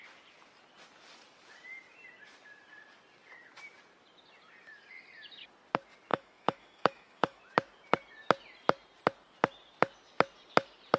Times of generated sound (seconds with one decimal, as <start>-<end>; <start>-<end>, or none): 6.1-7.4

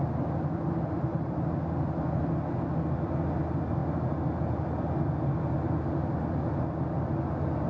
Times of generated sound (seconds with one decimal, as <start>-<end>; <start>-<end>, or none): none